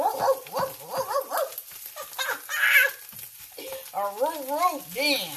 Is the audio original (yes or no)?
yes